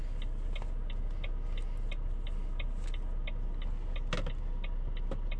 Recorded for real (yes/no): yes